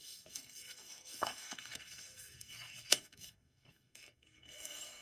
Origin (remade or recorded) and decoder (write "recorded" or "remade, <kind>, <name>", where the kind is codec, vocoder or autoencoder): remade, codec, SNAC